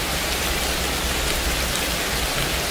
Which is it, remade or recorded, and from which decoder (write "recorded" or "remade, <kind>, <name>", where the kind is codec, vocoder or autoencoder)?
recorded